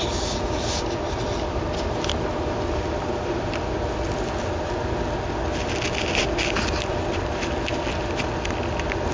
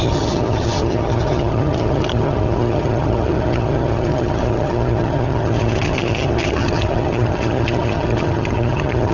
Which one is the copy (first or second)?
second